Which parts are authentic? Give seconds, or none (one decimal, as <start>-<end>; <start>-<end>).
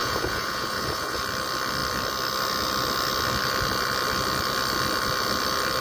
1.2-5.8